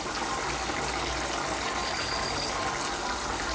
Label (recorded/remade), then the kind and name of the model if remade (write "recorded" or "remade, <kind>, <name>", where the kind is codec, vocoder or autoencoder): recorded